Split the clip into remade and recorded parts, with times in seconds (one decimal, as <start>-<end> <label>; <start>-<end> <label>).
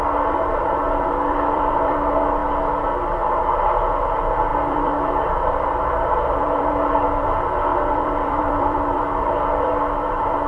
0.0-2.4 remade; 2.4-3.6 recorded; 3.6-10.5 remade